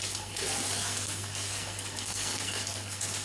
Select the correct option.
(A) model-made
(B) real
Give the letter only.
A